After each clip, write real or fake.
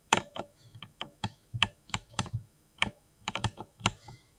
fake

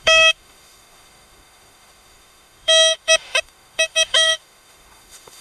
fake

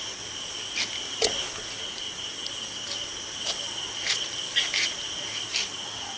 real